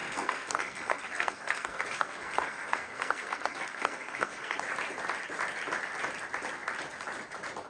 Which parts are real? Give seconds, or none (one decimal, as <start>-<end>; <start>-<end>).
4.6-7.7